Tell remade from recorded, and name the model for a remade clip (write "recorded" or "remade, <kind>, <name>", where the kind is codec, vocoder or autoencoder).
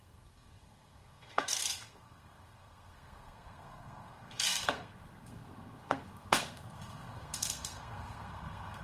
remade, codec, SNAC